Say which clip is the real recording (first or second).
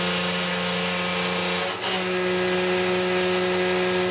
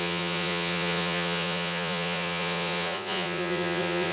first